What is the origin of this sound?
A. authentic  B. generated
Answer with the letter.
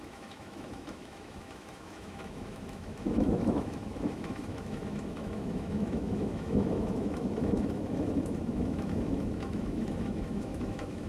B